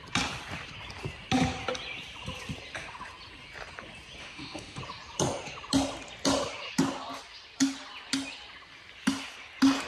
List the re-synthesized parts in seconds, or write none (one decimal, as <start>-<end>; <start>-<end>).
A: 4.2-4.8